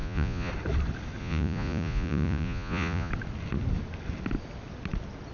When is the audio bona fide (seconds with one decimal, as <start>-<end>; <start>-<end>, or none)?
0.5-1.2; 3.1-5.3